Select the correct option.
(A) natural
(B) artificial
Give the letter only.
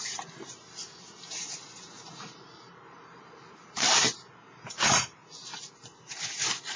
B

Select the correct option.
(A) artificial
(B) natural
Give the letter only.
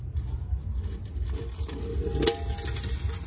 B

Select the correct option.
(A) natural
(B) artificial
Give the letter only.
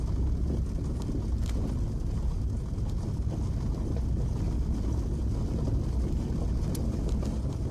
A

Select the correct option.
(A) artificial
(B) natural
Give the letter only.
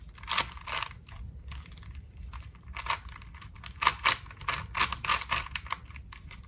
B